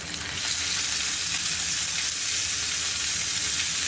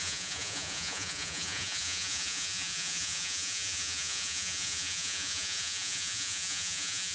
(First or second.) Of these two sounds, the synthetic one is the second